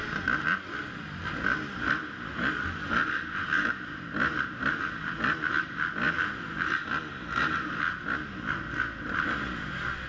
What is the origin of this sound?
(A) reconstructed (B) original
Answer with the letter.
B